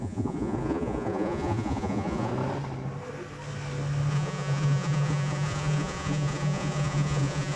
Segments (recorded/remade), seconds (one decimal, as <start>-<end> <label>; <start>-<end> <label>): 0.0-2.3 remade; 2.3-4.1 recorded; 4.1-7.6 remade